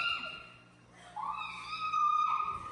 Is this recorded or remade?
recorded